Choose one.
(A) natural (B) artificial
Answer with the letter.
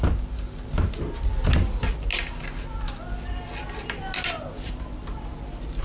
A